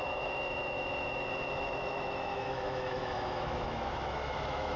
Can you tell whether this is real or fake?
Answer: fake